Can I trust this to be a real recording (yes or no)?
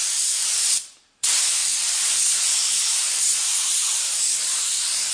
no